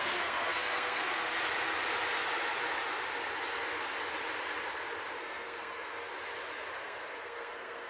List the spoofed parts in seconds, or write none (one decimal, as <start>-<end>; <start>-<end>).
0.0-1.1; 5.2-6.1; 6.8-7.9